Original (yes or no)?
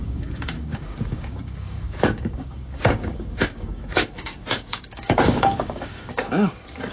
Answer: no